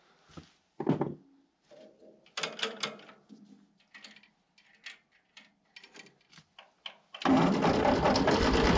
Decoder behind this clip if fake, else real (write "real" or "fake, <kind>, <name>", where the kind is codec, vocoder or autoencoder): real